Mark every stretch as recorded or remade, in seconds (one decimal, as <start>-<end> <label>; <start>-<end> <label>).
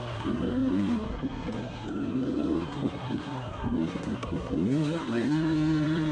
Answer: 0.0-6.1 remade